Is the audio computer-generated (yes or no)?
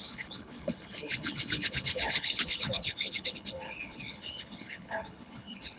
yes